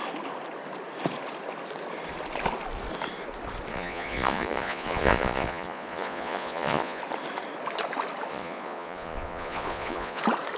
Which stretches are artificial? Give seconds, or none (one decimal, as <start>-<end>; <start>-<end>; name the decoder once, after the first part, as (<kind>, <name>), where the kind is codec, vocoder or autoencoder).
3.7-7.0 (vocoder, Vocos); 8.3-10.2